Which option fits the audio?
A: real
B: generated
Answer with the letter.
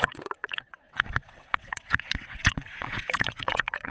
B